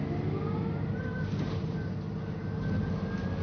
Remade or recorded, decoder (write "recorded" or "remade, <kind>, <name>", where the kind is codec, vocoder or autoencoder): recorded